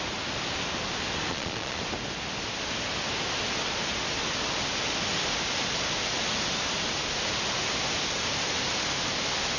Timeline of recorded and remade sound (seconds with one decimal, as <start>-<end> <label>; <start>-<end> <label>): 0.0-1.3 recorded; 1.3-1.8 remade; 1.8-9.6 recorded